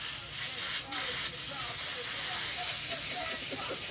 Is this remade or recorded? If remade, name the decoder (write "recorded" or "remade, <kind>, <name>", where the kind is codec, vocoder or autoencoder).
recorded